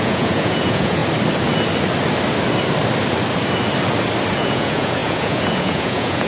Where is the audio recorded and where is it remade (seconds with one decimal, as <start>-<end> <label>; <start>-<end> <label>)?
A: 0.0-1.0 remade; 1.0-4.3 recorded; 4.3-6.3 remade

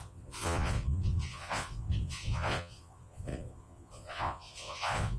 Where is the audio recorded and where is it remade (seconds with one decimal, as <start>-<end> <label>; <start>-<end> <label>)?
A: 0.0-5.2 remade